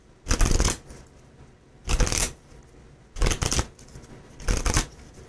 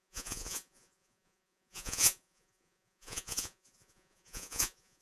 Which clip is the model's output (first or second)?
second